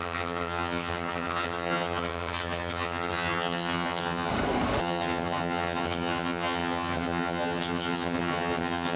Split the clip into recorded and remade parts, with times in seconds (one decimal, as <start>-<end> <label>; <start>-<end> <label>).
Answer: 0.0-4.3 remade; 4.3-4.8 recorded; 4.8-9.0 remade